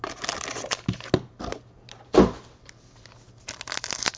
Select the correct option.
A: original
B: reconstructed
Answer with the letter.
A